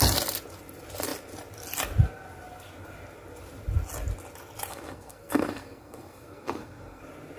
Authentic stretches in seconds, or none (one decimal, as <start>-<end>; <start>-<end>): 0.0-4.7; 7.0-7.4